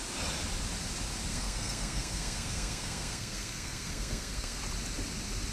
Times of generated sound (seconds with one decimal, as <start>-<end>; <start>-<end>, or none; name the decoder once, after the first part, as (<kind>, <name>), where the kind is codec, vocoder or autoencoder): 1.3-4.6 (codec, SNAC)

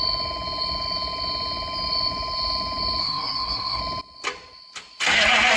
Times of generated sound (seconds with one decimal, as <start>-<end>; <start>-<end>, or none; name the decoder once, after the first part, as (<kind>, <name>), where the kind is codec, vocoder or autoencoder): 3.0-3.8 (codec, SNAC)

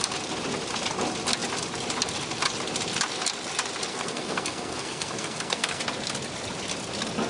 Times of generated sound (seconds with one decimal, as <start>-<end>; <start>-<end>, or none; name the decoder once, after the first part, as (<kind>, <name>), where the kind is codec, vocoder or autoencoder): 3.9-5.8 (codec, SNAC)

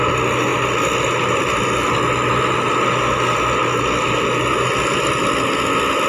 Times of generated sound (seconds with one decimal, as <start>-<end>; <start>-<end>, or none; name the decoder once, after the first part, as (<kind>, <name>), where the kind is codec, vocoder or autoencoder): none